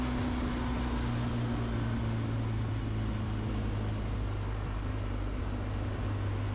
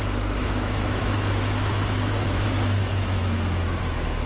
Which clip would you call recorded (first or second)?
first